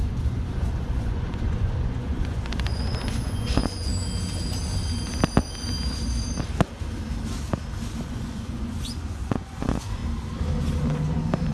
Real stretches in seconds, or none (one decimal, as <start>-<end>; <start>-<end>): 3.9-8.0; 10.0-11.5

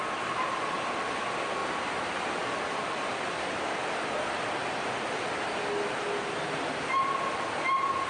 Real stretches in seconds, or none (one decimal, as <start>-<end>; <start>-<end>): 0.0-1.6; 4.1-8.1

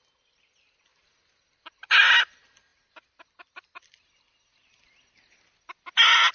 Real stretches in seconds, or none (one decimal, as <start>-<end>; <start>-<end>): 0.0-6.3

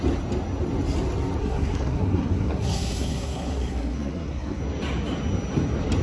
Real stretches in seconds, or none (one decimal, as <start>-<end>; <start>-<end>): 0.0-1.4; 4.6-6.0

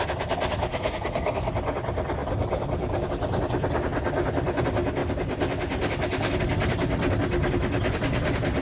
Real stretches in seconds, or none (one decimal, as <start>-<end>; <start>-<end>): 0.0-0.7; 1.5-8.6